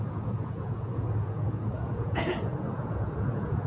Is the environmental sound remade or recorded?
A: remade